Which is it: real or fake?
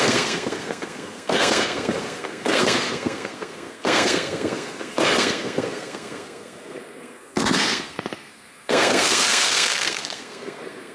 fake